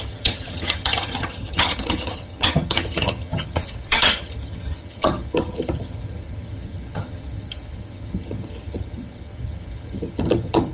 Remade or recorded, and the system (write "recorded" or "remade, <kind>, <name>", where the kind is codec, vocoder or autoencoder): remade, vocoder, HiFi-GAN